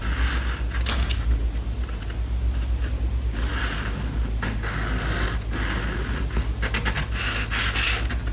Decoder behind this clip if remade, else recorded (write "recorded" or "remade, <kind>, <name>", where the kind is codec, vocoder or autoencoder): recorded